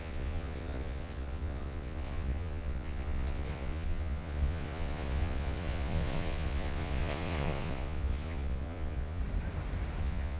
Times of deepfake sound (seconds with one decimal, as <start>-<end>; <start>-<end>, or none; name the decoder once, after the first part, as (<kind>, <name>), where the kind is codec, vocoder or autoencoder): 0.0-9.2 (vocoder, Vocos); 10.0-10.4